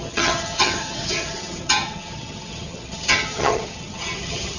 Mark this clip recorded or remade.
remade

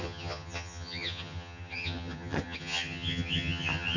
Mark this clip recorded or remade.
remade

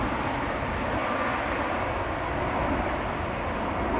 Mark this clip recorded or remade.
recorded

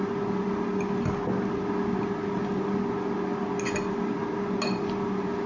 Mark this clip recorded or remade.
recorded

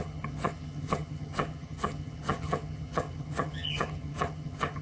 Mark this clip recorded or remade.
remade